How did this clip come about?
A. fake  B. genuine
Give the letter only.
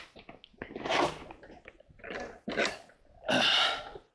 B